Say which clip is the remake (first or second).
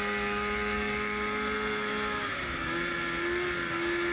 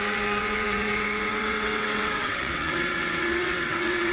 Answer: second